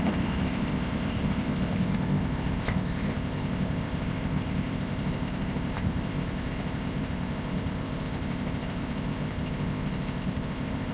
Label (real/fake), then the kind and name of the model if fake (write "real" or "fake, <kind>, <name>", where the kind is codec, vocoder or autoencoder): fake, codec, ZipCodec